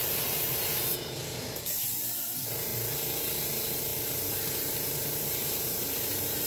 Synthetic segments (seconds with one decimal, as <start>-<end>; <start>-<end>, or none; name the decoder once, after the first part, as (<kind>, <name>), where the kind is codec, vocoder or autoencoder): 0.0-2.7 (vocoder, BigVGAN v2); 3.2-6.5